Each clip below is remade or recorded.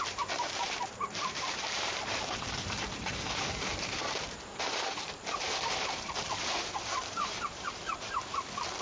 remade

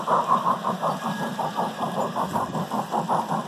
recorded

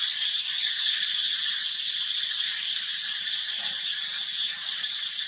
remade